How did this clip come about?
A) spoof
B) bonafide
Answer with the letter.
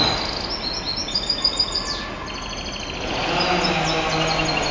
B